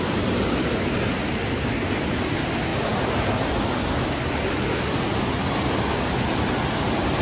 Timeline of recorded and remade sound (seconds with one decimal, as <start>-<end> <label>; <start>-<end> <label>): 0.0-7.2 recorded